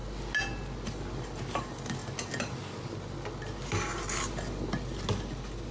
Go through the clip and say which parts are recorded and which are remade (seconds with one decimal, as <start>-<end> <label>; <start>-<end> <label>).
0.0-5.7 recorded